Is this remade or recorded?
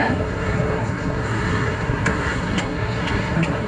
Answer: remade